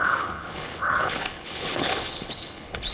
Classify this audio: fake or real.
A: fake